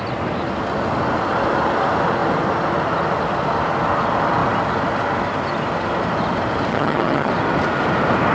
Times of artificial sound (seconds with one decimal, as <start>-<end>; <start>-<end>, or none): 6.7-7.3